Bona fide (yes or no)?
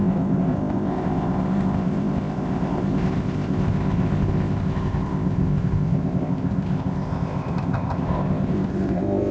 no